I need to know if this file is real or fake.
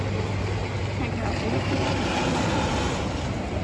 real